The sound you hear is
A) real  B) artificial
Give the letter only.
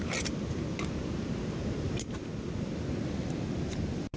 A